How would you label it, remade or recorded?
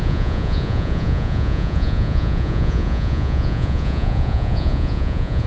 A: remade